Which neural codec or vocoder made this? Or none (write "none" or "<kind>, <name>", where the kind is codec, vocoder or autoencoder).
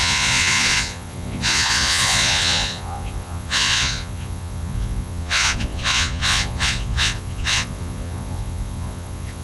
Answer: vocoder, Vocos